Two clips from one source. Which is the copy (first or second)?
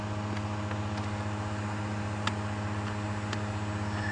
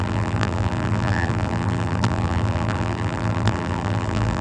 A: second